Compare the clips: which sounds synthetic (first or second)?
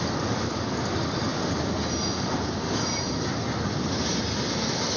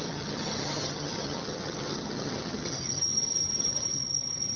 second